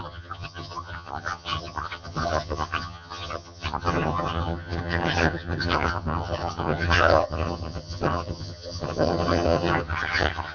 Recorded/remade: remade